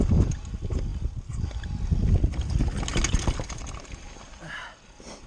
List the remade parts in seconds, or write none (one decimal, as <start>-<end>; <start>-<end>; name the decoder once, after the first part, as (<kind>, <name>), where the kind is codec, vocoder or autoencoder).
none